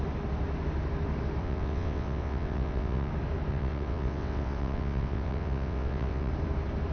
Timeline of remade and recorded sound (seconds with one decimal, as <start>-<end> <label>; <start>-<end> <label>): 0.0-1.4 recorded; 1.4-3.1 remade; 3.1-3.5 recorded; 3.5-6.3 remade; 6.3-6.9 recorded